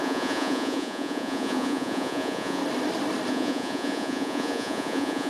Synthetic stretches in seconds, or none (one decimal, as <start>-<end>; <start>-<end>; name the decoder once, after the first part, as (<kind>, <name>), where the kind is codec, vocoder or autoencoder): 0.0-2.6 (vocoder, Vocos); 3.3-5.3